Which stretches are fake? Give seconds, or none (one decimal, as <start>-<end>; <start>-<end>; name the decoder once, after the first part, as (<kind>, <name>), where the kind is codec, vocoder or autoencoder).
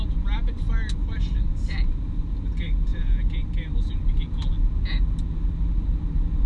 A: none